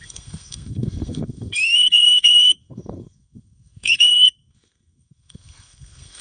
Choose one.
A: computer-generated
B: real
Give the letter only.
A